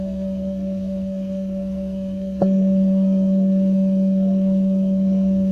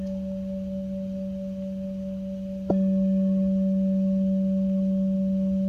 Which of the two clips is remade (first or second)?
first